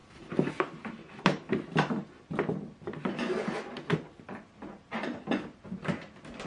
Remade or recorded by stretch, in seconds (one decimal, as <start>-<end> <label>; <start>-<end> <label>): 0.0-0.6 remade; 0.6-1.7 recorded; 1.7-2.2 remade; 2.2-6.5 recorded